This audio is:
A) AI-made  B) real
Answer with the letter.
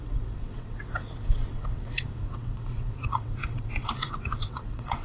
A